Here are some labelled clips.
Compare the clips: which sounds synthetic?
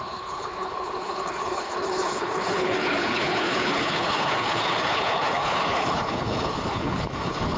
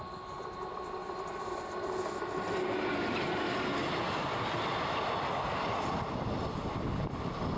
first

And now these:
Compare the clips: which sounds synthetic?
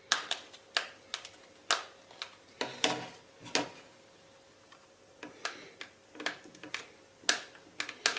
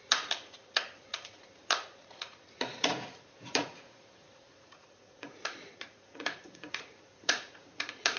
second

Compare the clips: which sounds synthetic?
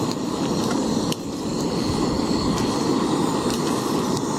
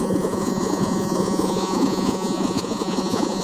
second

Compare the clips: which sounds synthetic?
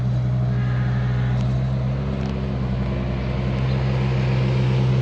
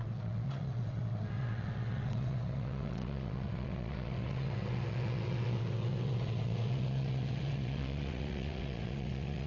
second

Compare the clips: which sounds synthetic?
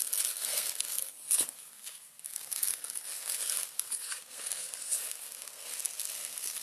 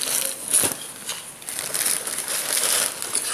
first